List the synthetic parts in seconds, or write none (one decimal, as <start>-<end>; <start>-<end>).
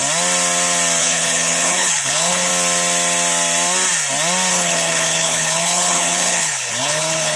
1.0-2.5; 4.5-7.4